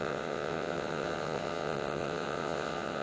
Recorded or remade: remade